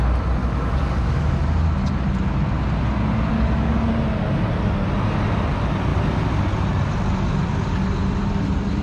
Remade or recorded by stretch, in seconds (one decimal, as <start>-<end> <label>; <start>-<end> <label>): 0.0-0.4 recorded; 0.4-1.3 remade; 1.3-3.3 recorded; 3.3-3.9 remade; 3.9-8.8 recorded